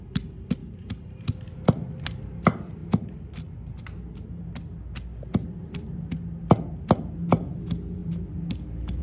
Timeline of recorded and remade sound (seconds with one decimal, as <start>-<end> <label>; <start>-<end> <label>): 0.0-0.6 recorded; 0.6-2.3 remade; 2.3-9.0 recorded